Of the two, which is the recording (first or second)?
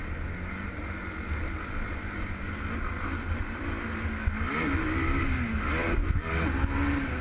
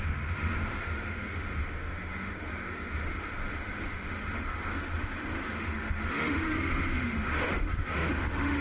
first